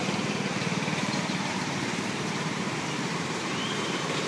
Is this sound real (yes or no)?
no